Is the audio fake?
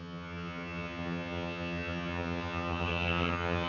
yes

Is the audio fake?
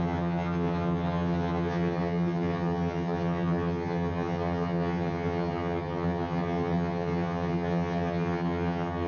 yes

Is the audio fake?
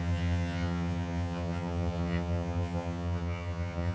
yes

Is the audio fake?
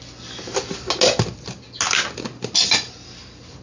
no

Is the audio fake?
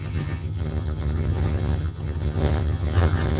yes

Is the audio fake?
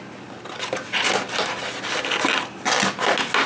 no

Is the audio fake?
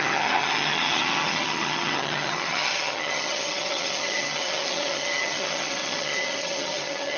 yes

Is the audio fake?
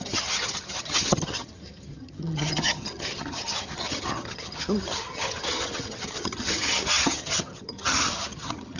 yes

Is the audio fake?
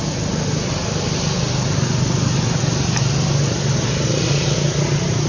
no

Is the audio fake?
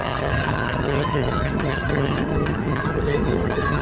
yes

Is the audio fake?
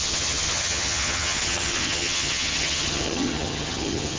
yes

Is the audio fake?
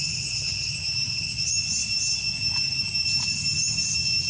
no